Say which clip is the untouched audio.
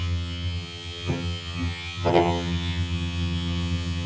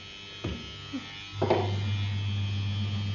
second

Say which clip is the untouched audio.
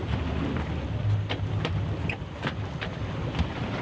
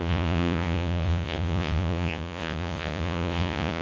first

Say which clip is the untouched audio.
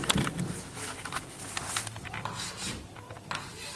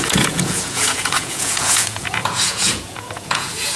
first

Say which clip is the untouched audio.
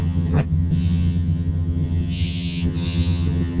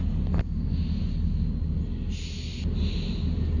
second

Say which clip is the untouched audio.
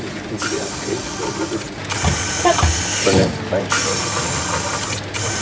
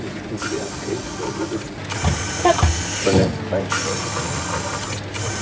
second